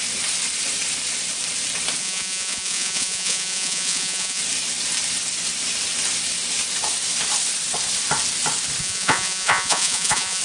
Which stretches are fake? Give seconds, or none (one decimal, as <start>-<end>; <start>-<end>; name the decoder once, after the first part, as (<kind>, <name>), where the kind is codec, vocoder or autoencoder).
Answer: 2.0-4.4 (vocoder, Vocos); 8.8-10.4